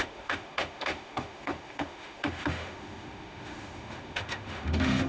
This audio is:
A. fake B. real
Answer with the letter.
A